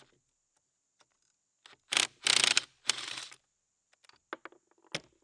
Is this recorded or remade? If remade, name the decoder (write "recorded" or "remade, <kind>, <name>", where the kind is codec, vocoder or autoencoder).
recorded